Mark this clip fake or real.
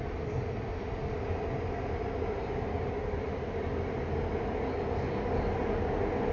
real